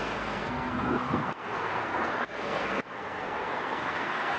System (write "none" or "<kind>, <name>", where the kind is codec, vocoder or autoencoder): codec, SNAC